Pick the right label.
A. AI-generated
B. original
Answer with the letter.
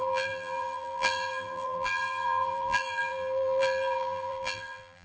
A